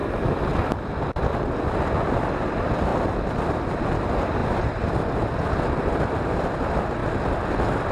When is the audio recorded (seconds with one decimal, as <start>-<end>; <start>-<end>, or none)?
0.0-4.4; 6.4-7.0